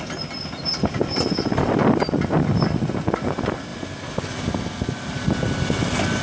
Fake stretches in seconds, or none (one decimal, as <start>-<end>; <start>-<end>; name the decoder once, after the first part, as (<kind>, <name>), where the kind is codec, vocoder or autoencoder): none